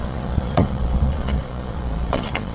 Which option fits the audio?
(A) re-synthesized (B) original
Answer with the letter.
A